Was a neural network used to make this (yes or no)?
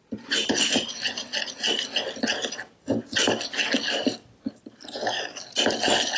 no